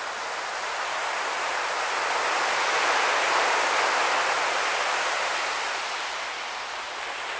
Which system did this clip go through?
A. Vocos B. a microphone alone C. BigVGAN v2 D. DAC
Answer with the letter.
C